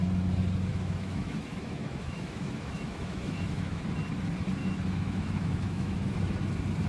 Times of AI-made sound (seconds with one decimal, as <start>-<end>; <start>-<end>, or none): 0.7-3.8; 4.6-6.0